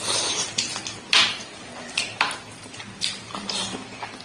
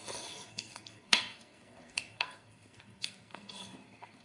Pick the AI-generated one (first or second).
second